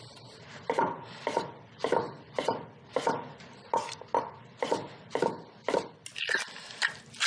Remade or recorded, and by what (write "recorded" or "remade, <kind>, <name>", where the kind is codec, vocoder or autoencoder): recorded